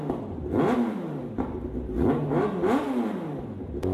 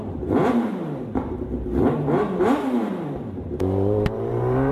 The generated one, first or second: second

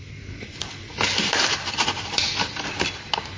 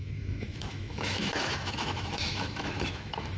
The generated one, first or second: second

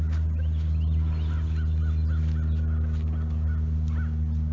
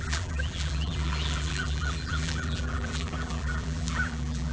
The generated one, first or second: second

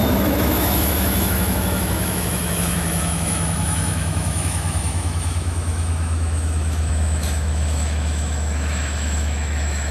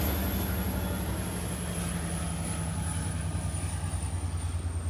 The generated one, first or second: first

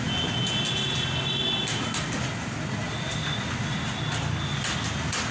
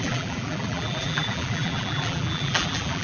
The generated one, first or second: second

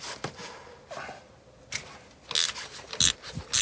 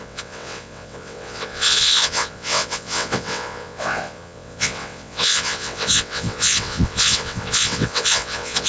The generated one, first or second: second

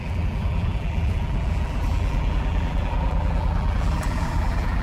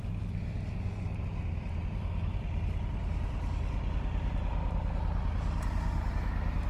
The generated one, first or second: first